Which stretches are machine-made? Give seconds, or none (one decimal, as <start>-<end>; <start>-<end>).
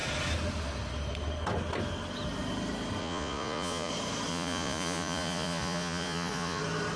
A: 3.0-3.9; 4.3-6.6